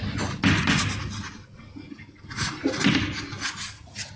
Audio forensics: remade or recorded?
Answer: recorded